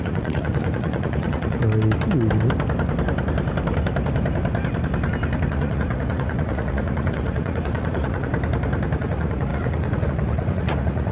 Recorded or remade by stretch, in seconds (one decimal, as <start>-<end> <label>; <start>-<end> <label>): 0.0-1.6 remade; 1.6-5.5 recorded; 5.5-8.3 remade; 8.3-9.0 recorded; 9.0-11.1 remade